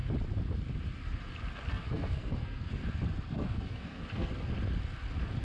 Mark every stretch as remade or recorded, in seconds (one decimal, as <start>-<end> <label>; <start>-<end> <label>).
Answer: 0.0-1.7 recorded; 1.7-2.8 remade; 2.8-3.3 recorded; 3.3-4.3 remade; 4.3-5.4 recorded